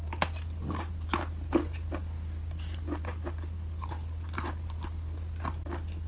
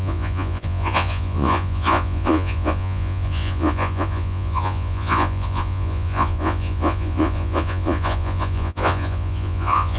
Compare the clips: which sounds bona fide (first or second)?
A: first